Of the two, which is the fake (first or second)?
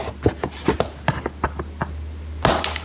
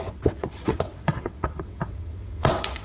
second